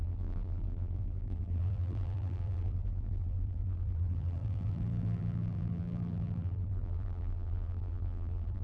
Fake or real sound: fake